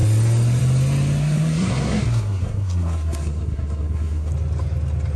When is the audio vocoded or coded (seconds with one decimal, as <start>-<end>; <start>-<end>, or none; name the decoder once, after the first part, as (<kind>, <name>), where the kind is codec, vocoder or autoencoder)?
1.2-4.3 (codec, SNAC)

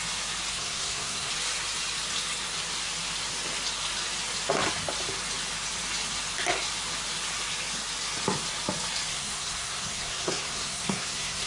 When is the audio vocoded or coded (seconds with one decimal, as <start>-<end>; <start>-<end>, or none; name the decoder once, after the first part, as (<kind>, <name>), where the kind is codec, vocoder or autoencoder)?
0.5-1.3 (codec, SNAC); 9.1-11.5